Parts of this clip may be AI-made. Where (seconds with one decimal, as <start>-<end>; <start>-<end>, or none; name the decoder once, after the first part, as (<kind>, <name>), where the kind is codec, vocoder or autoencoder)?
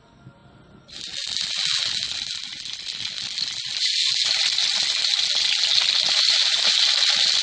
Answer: none